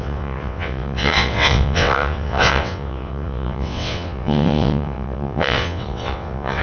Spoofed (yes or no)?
yes